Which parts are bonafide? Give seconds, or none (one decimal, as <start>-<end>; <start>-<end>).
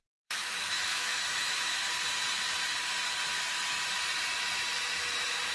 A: 1.9-5.5